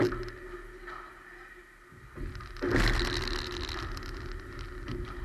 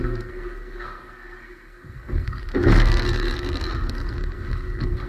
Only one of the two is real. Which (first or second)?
first